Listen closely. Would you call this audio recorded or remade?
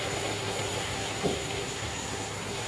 remade